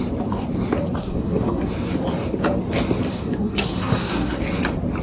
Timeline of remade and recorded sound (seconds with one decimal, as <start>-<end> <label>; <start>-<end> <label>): 0.0-1.0 recorded; 1.0-1.7 remade; 1.7-3.1 recorded; 3.1-4.4 remade; 4.4-5.0 recorded